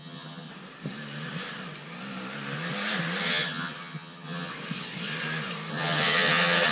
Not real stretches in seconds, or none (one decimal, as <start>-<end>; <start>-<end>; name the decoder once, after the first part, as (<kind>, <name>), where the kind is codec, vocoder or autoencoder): 0.0-0.5 (vocoder, HiFi-GAN); 3.2-4.5; 5.7-6.7